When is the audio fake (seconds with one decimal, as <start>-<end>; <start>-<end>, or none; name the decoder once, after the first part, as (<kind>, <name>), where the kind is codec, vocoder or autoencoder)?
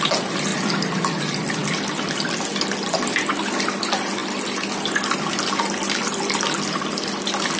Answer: none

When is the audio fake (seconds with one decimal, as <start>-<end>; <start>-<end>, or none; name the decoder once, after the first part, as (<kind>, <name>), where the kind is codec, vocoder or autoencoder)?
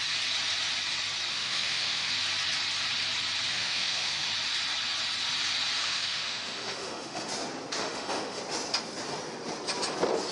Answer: 1.3-2.1 (autoencoder, DAC-VAE); 3.5-4.3; 5.8-7.3; 7.8-8.4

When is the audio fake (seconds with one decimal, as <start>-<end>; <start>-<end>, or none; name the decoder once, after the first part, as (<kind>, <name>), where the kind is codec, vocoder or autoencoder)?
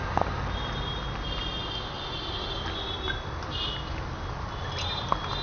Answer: none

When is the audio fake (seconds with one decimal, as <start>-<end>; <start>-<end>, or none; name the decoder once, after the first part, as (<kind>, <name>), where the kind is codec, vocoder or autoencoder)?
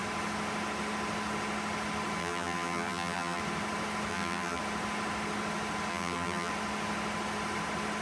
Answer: 2.2-3.4 (vocoder, BigVGAN v2); 4.1-4.6; 5.9-6.5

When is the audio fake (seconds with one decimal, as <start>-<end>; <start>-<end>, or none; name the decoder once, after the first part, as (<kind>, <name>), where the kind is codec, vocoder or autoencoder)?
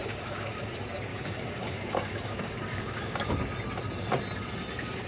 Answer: 0.0-0.7 (codec, DAC); 1.1-3.3